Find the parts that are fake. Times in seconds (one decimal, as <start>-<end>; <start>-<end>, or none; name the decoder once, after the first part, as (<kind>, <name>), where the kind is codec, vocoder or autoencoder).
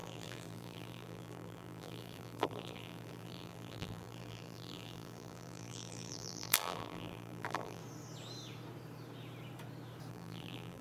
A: 0.0-7.8 (vocoder, BigVGAN v2); 10.1-10.8